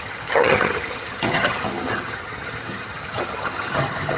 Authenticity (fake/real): fake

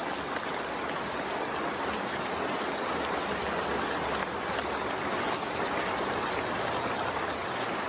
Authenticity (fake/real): real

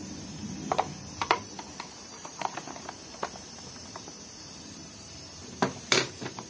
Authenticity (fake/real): fake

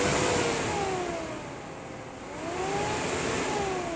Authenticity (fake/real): real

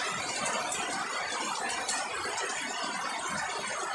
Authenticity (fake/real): real